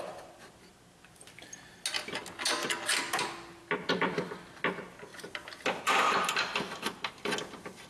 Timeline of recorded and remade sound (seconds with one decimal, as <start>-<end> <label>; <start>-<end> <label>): 0.0-7.9 recorded